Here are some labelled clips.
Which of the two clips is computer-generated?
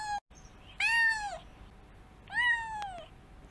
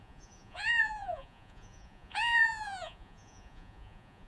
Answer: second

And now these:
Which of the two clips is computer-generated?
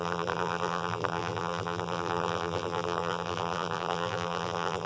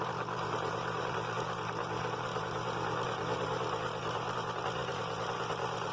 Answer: first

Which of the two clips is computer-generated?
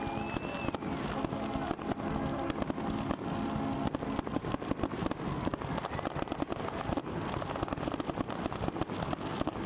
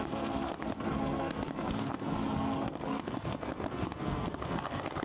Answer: second